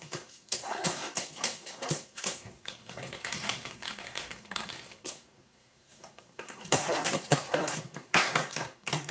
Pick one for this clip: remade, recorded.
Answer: remade